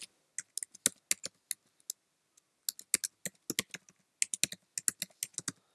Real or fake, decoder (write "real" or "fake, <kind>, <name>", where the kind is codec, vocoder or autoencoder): real